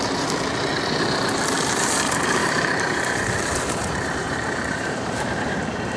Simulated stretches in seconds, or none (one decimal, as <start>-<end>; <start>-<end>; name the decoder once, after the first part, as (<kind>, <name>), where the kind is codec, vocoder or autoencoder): 2.4-3.2 (vocoder, BigVGAN v2); 4.2-5.3